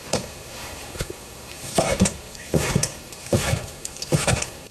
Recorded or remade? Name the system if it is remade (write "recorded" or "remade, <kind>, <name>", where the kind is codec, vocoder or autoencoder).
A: remade, codec, SNAC